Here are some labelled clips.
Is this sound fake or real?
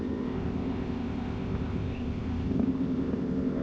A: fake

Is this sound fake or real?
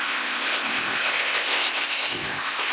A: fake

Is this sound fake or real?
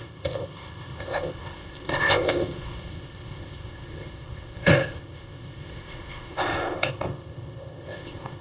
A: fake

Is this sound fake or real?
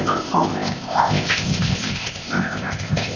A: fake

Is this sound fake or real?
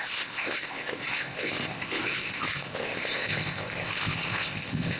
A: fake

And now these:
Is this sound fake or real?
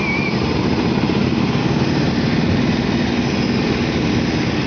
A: real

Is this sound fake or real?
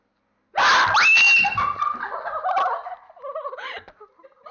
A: real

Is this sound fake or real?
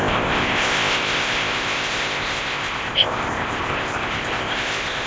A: fake